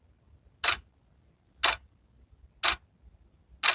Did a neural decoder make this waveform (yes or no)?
no